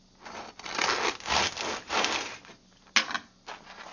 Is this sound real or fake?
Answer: real